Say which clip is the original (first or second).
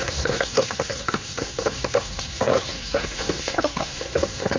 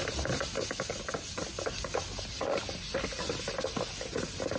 second